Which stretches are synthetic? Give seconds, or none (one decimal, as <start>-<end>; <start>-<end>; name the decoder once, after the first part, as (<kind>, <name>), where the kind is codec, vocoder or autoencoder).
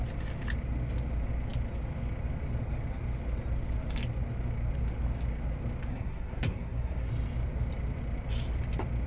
5.9-7.1 (codec, SNAC)